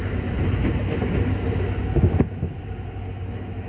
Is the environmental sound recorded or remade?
recorded